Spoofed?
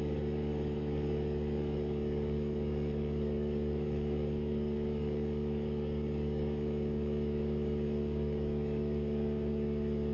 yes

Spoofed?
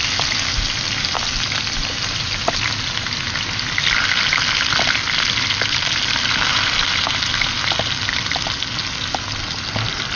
no